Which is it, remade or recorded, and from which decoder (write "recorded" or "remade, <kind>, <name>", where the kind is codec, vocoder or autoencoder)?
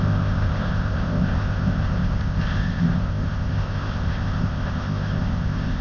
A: remade, codec, ZipCodec